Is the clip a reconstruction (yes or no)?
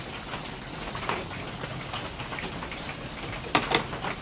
no